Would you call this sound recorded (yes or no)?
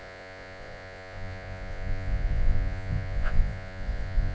no